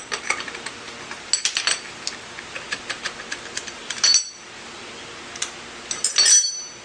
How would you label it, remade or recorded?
recorded